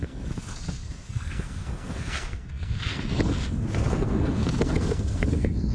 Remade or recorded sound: remade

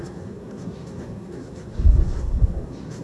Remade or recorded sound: remade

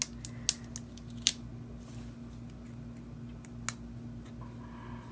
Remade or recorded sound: recorded